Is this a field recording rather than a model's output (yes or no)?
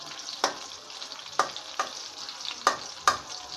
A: yes